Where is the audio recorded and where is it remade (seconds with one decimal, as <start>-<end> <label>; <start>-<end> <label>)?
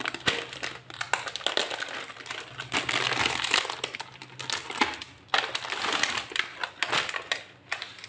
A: 0.0-8.1 recorded